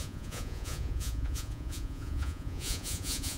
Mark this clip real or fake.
fake